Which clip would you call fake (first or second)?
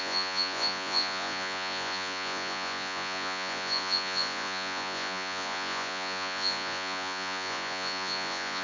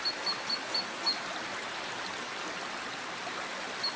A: first